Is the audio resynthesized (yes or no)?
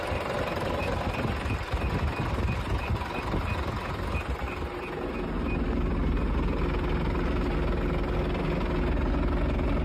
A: no